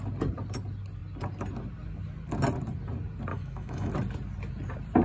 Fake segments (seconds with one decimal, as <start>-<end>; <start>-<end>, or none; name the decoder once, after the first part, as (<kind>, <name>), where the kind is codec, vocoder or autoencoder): 3.3-3.9 (autoencoder, DAC-VAE)